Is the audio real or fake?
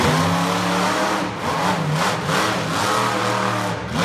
real